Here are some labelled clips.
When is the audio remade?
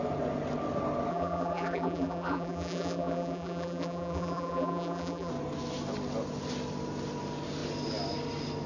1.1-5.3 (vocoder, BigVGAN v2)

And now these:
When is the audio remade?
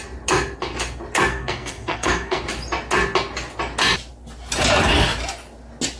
1.3-2.4 (codec, SNAC)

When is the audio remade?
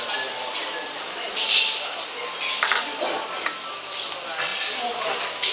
0.6-1.5 (vocoder, BigVGAN v2)